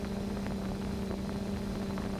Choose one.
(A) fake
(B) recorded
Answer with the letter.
B